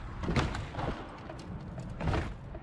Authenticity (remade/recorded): recorded